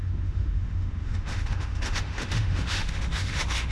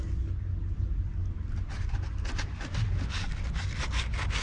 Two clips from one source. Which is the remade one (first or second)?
first